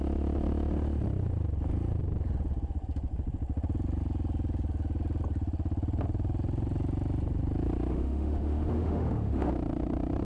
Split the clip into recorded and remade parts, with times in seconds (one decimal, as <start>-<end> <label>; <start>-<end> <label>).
0.0-7.9 recorded; 7.9-9.5 remade; 9.5-10.2 recorded